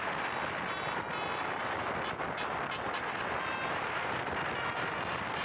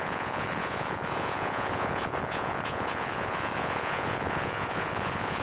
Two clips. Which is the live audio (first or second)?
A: first